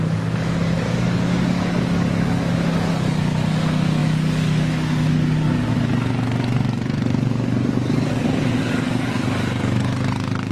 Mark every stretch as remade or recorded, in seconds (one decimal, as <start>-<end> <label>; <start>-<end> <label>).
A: 0.0-10.5 remade